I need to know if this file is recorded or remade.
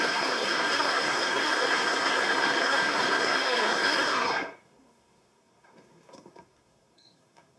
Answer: remade